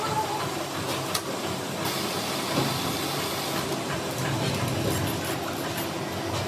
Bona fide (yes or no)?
yes